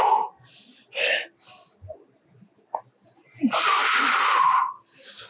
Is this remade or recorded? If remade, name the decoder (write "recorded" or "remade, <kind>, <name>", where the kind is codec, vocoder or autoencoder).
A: recorded